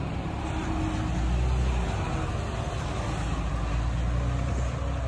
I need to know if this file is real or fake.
real